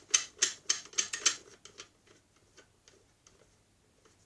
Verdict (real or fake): real